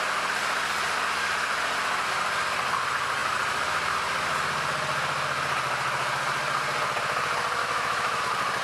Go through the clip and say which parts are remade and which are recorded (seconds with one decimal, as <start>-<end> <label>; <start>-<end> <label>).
0.0-7.6 recorded; 7.6-8.2 remade; 8.2-8.6 recorded